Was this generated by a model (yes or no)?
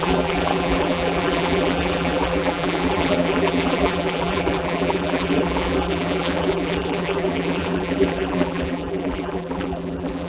yes